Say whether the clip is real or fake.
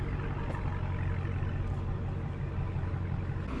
real